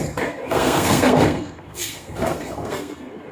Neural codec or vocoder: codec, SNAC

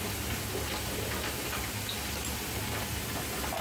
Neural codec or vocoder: none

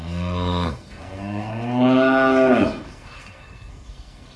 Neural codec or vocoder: codec, SNAC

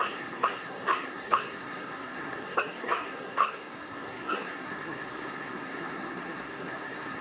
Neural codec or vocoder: codec, SNAC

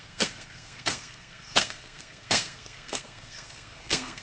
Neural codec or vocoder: codec, SNAC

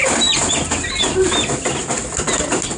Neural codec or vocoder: none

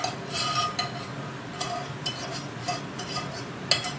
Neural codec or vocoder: none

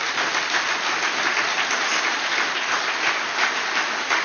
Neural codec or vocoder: none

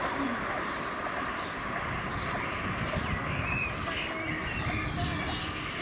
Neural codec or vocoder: none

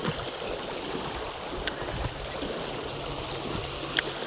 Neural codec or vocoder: none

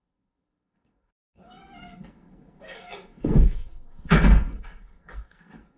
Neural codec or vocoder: codec, SNAC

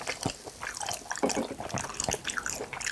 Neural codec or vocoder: none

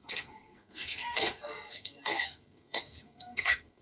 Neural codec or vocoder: codec, SNAC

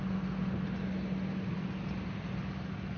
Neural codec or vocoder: none